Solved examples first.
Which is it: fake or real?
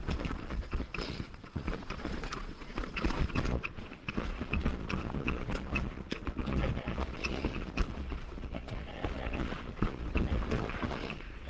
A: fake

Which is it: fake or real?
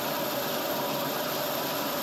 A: real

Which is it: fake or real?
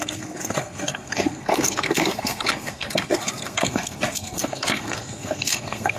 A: fake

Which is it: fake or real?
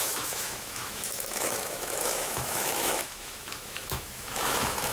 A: fake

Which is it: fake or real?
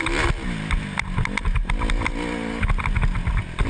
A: real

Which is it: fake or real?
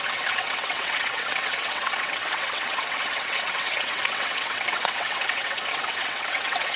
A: fake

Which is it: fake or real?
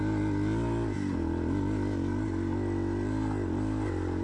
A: real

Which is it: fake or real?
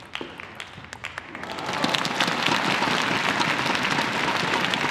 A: real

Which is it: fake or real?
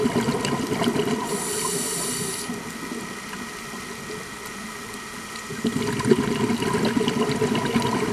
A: real